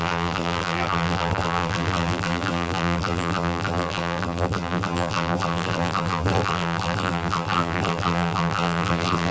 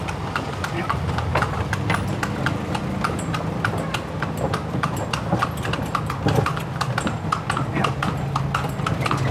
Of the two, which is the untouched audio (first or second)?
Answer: second